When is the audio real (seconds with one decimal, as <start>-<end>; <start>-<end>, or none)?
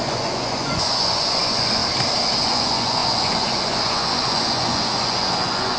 1.8-2.4